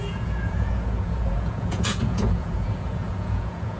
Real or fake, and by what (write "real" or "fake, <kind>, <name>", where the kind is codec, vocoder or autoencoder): fake, vocoder, Vocos